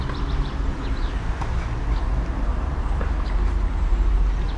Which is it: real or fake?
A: real